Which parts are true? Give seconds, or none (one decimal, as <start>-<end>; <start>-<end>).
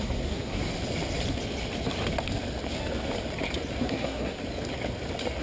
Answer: 0.6-3.8; 4.4-5.4